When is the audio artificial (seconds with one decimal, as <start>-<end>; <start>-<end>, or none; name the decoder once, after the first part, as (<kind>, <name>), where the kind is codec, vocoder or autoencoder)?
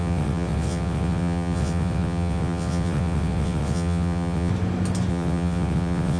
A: 0.0-4.5 (vocoder, WaveNeXt); 5.1-6.2